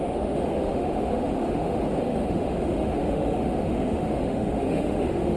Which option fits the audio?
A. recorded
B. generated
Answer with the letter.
B